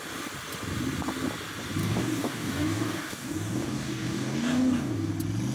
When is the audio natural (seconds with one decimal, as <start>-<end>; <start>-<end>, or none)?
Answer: 0.0-1.8; 5.1-5.5